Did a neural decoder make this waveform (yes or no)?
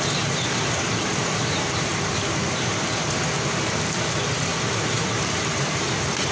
yes